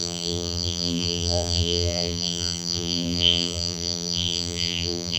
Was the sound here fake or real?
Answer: fake